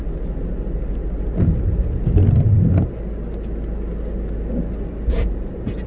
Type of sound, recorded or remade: recorded